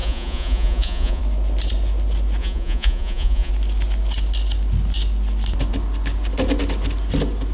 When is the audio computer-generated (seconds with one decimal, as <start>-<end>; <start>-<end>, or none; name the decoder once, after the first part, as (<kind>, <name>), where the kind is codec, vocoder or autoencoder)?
0.0-1.2 (vocoder, Vocos); 2.4-3.5